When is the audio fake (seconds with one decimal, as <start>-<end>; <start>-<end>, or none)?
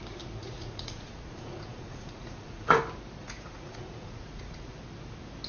0.4-2.8; 3.2-4.8